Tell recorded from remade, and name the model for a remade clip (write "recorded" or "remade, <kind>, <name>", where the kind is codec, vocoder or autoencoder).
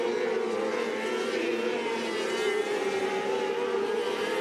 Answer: recorded